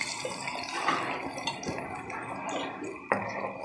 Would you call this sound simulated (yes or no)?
no